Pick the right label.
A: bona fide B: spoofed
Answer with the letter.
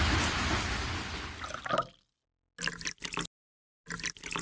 A